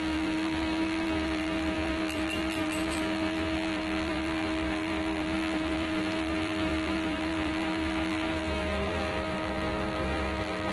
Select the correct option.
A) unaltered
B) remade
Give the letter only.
B